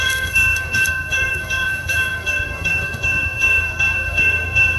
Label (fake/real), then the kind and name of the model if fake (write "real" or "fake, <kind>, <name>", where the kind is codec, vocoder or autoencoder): fake, codec, SNAC